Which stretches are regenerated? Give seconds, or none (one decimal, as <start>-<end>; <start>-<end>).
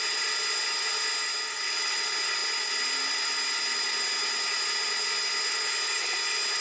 none